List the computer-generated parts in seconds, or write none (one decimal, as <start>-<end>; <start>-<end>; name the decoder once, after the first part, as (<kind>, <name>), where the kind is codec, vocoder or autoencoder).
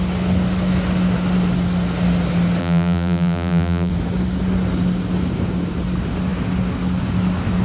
2.6-3.9 (vocoder, BigVGAN v2)